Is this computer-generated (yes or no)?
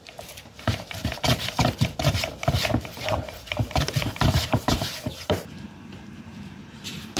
yes